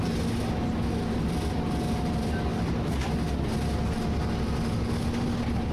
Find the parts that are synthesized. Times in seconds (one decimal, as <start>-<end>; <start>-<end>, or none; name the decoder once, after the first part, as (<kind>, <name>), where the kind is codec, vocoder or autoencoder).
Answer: none